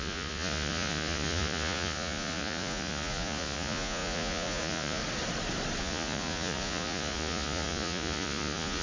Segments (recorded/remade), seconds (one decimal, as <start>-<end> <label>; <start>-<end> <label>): 0.0-5.0 remade; 5.0-5.8 recorded; 5.8-8.8 remade